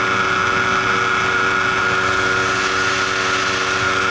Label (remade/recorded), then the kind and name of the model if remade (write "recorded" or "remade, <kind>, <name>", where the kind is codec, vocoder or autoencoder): recorded